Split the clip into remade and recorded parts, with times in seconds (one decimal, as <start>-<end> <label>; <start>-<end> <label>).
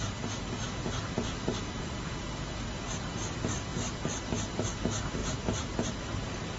0.0-6.6 recorded